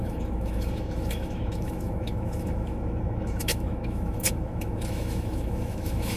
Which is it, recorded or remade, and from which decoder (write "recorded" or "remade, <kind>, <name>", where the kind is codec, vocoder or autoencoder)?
remade, autoencoder, DAC-VAE